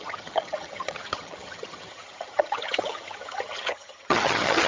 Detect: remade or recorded remade